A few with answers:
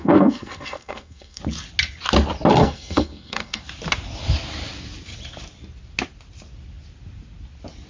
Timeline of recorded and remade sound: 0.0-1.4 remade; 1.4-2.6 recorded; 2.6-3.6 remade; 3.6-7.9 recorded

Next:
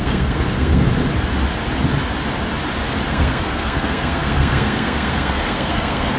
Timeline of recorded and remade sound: 0.0-0.9 remade; 0.9-3.1 recorded; 3.1-6.2 remade

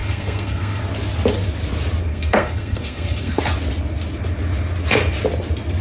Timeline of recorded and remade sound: 0.0-0.8 remade; 0.8-2.1 recorded; 2.1-3.4 remade; 3.4-5.8 recorded

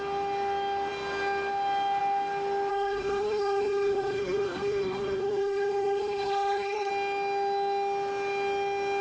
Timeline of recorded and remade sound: 0.0-2.7 recorded; 2.7-6.9 remade; 6.9-9.0 recorded

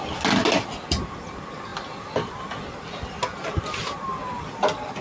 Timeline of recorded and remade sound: 0.0-5.0 recorded

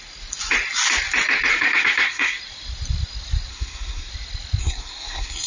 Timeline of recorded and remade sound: 0.0-1.5 recorded; 1.5-2.4 remade; 2.4-3.5 recorded; 3.5-4.1 remade; 4.1-4.6 recorded; 4.6-5.5 remade

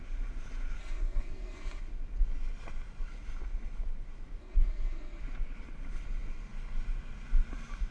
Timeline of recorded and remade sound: 0.0-0.8 recorded; 0.8-1.8 remade; 1.8-4.4 recorded; 4.4-5.2 remade; 5.2-7.9 recorded